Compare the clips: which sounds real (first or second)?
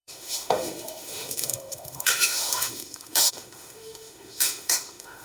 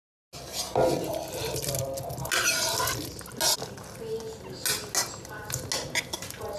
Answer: second